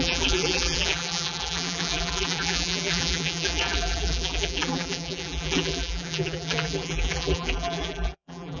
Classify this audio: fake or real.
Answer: fake